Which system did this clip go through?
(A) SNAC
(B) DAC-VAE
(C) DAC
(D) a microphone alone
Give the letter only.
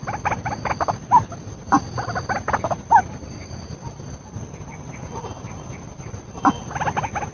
D